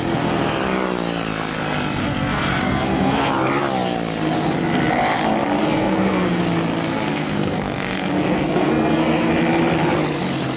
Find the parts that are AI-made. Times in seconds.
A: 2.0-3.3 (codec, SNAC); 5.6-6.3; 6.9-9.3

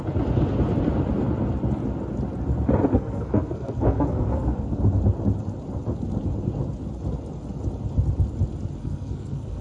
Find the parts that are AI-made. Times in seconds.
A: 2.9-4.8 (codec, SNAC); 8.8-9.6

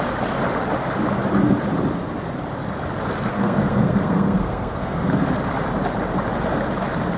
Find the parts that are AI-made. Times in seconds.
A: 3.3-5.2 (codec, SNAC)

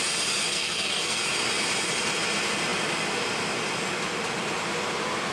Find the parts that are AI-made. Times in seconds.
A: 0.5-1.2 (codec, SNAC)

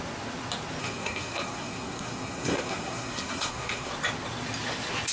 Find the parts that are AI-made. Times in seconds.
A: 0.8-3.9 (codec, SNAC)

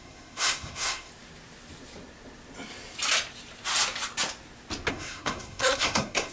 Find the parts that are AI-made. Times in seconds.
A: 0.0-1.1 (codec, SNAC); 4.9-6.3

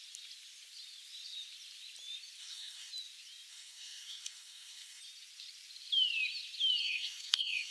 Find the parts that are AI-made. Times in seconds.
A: 2.4-2.9 (codec, SNAC); 3.5-5.0; 6.8-7.7